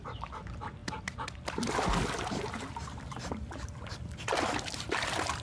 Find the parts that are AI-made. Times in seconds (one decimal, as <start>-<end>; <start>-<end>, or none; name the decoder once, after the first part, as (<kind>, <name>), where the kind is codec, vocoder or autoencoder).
none